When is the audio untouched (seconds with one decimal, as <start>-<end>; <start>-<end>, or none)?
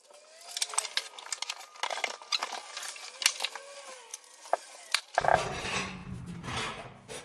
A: 0.0-4.1; 5.0-7.2